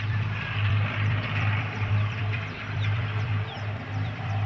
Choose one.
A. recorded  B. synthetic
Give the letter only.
B